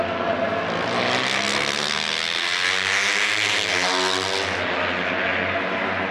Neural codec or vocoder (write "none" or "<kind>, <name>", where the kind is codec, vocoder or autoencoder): none